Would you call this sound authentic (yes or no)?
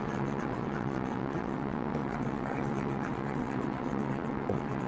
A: no